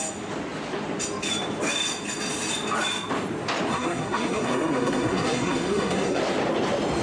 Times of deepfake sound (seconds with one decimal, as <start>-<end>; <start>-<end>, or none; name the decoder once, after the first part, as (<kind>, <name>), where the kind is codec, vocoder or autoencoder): 3.7-6.2 (codec, SNAC)